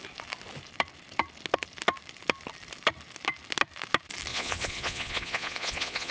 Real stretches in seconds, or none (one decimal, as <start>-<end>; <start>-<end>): 0.0-4.3